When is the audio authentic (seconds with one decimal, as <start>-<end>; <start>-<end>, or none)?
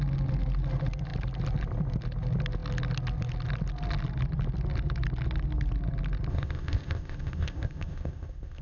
0.0-6.3